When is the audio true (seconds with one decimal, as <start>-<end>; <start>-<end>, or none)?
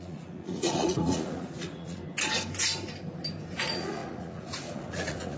2.0-3.6